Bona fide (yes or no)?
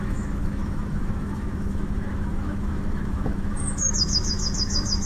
no